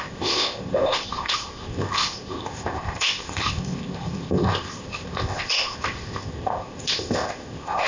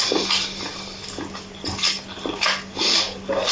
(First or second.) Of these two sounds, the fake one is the first